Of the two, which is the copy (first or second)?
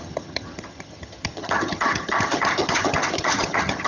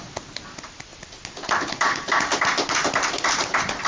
first